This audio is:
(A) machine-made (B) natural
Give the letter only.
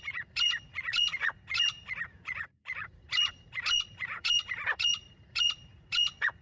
A